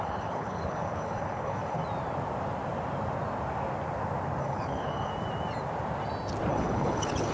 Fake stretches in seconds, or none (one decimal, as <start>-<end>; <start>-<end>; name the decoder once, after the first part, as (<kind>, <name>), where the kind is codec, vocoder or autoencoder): 0.0-1.8 (codec, HILCodec); 4.4-5.1; 6.5-7.3